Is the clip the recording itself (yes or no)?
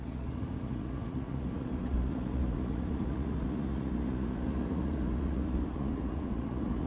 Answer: no